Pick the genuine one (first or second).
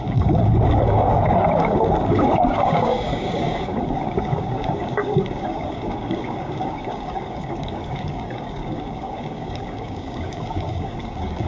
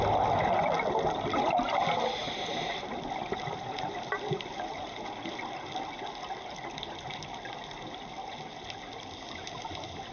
second